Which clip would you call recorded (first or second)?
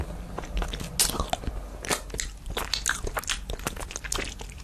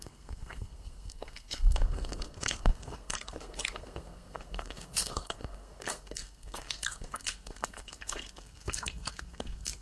first